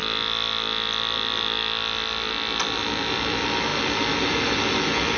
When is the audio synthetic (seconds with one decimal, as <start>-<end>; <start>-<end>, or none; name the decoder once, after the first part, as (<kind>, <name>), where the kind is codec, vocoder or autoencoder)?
none